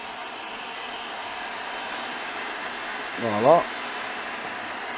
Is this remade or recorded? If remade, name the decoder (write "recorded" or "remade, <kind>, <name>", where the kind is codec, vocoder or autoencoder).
recorded